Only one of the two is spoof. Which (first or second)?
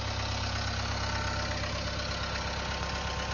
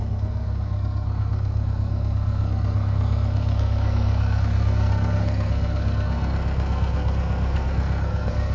second